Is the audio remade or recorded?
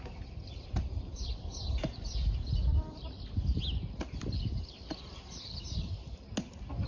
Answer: recorded